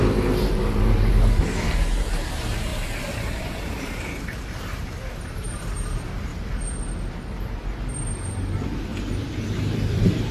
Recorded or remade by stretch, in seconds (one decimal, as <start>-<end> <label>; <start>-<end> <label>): 0.0-2.7 remade; 2.7-3.4 recorded; 3.4-6.3 remade; 6.3-8.1 recorded; 8.1-10.3 remade

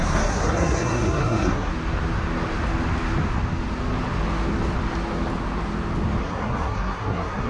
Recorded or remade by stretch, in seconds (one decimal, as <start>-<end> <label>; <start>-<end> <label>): 0.0-1.7 remade; 1.7-6.2 recorded; 6.2-7.5 remade

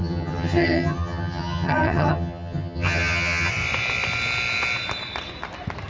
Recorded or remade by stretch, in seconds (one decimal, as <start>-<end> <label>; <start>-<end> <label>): 0.0-3.5 remade; 3.5-5.9 recorded

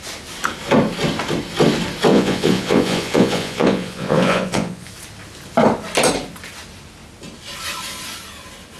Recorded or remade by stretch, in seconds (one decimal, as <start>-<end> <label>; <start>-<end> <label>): 0.0-2.1 recorded; 2.1-4.9 remade; 4.9-8.8 recorded

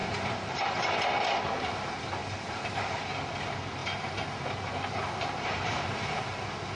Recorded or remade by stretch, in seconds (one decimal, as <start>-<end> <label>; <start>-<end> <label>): 0.0-0.9 remade; 0.9-2.2 recorded; 2.2-3.0 remade; 3.0-3.8 recorded; 3.8-6.2 remade; 6.2-6.7 recorded

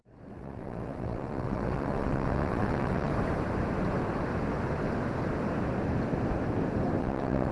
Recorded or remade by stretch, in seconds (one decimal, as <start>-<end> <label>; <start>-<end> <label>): 0.0-3.1 remade; 3.1-7.0 recorded; 7.0-7.5 remade

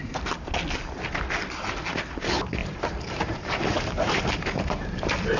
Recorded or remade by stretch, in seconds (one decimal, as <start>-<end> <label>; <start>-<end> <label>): 0.0-2.6 recorded; 2.6-5.4 remade

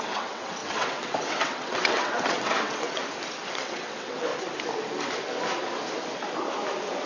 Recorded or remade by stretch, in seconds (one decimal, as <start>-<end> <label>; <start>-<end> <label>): 0.0-3.0 remade; 3.0-3.5 recorded; 3.5-4.3 remade; 4.3-7.1 recorded